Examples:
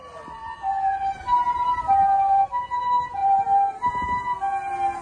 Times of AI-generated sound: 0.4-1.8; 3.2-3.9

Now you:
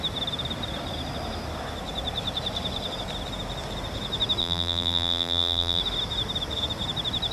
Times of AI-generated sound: 4.4-5.8